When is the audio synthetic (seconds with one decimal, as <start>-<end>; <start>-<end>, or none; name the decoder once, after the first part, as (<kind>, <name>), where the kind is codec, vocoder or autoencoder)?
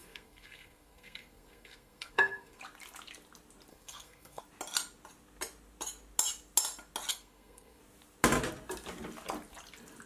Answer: 0.0-2.6 (codec, SNAC); 3.7-4.4; 7.1-7.8